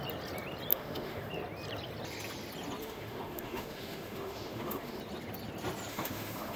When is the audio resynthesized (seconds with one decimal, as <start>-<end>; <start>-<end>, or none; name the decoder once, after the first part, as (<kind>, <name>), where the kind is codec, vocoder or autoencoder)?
0.7-1.3 (autoencoder, DAC-VAE); 2.8-5.0; 5.9-6.6